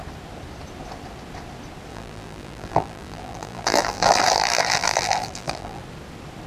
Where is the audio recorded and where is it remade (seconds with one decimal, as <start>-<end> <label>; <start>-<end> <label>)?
0.0-1.9 recorded; 1.9-5.8 remade; 5.8-6.5 recorded